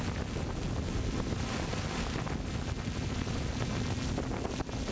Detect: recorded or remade recorded